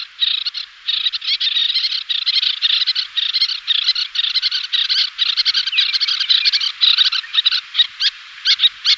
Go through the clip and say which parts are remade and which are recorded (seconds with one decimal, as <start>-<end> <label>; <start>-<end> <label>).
0.0-9.0 recorded